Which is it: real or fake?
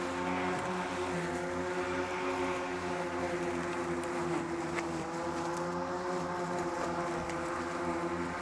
real